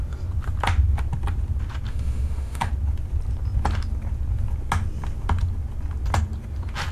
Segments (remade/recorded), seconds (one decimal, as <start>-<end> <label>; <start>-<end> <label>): 0.0-1.9 recorded; 1.9-2.7 remade; 2.7-6.9 recorded